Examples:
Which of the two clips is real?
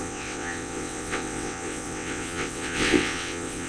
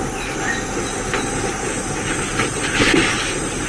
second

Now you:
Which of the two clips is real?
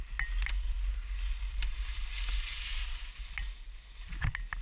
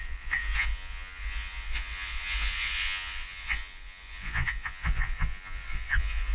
first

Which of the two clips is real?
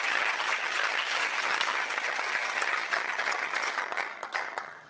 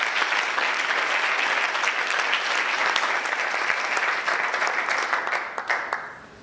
second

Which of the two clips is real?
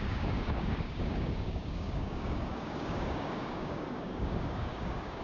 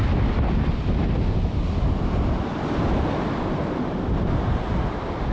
second